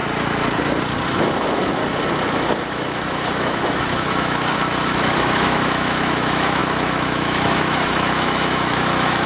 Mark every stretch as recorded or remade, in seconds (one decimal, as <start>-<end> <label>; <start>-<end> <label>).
0.0-1.2 recorded; 1.2-1.8 remade; 1.8-2.7 recorded; 2.7-9.3 remade